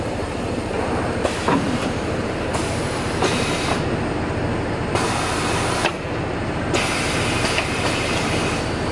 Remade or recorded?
remade